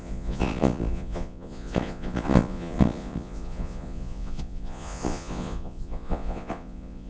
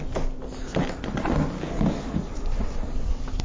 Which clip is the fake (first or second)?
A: first